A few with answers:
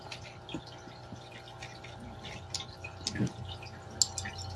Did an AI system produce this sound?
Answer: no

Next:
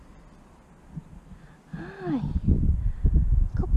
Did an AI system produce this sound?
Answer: no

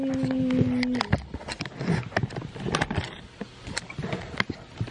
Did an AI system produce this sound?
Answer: no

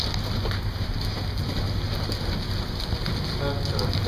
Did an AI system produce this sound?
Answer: no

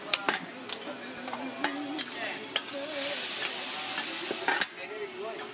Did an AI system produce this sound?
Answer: no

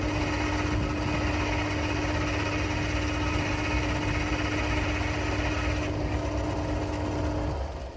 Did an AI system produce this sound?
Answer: no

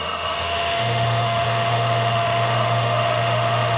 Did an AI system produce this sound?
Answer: yes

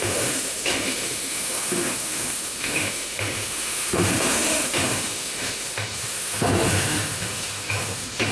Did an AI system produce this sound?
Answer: yes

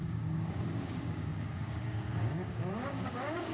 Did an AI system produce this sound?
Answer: yes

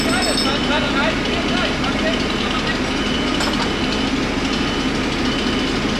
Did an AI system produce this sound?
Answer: no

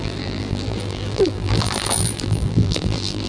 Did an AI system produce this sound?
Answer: yes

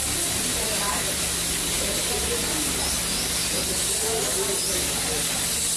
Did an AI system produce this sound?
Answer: no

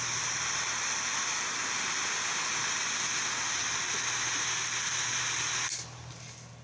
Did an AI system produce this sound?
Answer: no